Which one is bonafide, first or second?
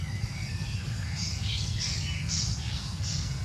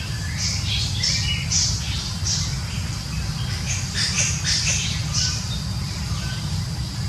second